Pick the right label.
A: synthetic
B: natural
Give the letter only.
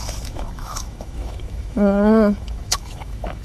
A